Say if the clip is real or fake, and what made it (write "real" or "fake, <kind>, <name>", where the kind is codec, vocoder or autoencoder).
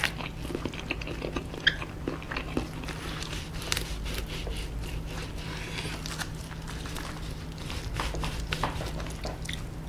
real